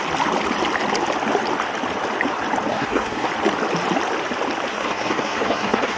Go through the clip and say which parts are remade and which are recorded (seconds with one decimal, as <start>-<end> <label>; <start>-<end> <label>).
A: 0.0-2.7 recorded; 2.7-3.3 remade; 3.3-4.7 recorded; 4.7-6.0 remade